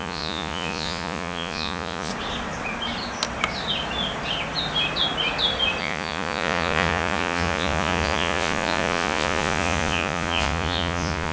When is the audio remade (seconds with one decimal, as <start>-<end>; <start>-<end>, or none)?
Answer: 0.0-2.1; 5.8-11.3